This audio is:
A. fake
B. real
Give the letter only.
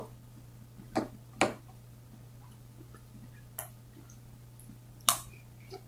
B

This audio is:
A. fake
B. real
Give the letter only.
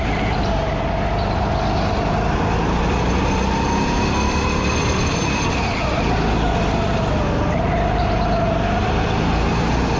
B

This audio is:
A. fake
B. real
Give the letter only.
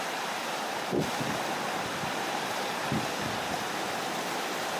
A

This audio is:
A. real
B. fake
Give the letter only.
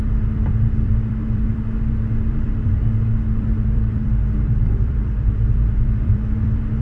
B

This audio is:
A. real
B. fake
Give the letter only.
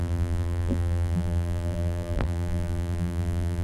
B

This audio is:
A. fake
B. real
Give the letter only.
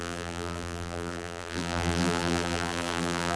A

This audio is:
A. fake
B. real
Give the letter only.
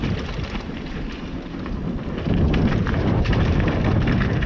A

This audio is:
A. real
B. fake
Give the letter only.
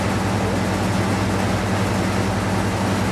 A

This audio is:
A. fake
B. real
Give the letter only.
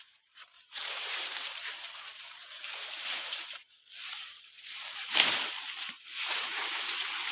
A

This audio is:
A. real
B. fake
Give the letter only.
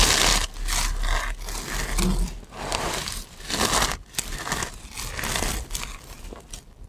A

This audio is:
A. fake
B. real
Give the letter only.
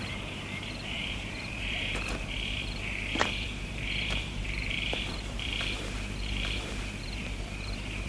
A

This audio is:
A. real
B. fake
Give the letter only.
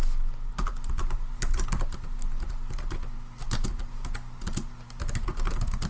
A